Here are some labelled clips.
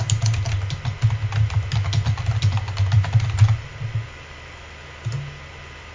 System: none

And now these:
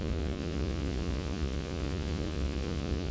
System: vocoder, Vocos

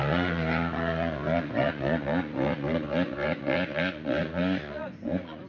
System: vocoder, Vocos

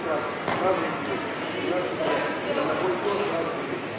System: none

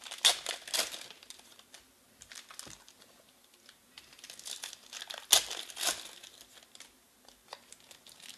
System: none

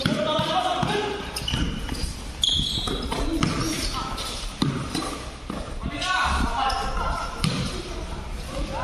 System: none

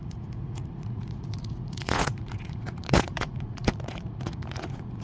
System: vocoder, Vocos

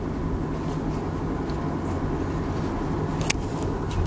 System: none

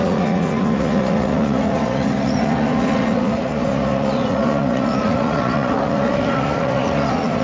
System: vocoder, Vocos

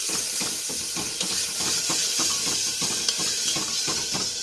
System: none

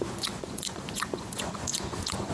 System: vocoder, Vocos